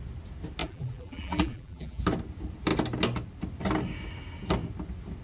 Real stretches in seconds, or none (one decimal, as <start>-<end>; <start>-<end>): 0.0-0.6; 2.0-5.2